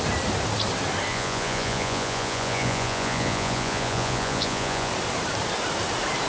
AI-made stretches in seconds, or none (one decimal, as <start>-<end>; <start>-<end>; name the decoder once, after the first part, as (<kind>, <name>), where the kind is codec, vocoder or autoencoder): 1.1-4.9 (vocoder, Vocos)